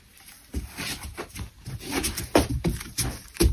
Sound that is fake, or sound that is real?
fake